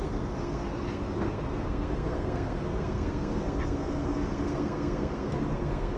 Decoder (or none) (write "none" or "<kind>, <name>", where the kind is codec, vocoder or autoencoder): codec, SNAC